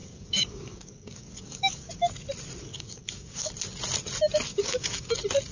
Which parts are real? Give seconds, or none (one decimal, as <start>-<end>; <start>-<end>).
1.9-2.7; 3.5-4.5; 5.1-5.5